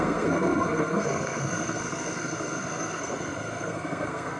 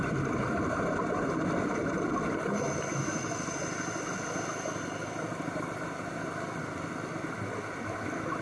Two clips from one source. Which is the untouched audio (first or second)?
second